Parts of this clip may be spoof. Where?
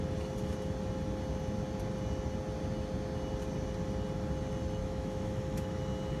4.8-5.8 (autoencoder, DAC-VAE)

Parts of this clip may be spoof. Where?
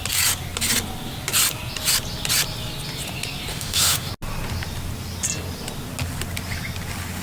3.5-4.1 (autoencoder, DAC-VAE)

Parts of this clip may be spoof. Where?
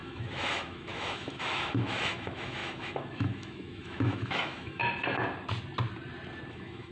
0.0-4.8 (autoencoder, DAC-VAE); 6.5-6.9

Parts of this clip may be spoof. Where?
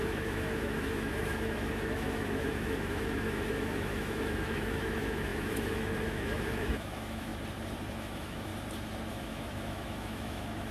0.0-7.3 (autoencoder, DAC-VAE); 7.9-8.5; 9.1-10.7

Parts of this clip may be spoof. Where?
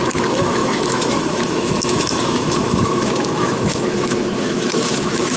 0.0-5.4 (autoencoder, DAC-VAE)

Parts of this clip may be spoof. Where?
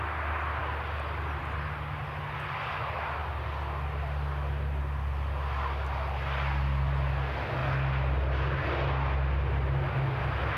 none